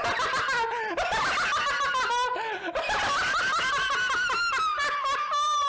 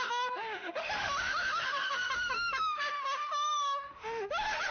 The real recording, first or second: first